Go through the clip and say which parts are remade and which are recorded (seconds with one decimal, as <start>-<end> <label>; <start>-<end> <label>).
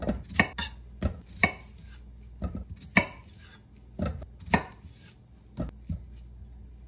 0.0-6.9 recorded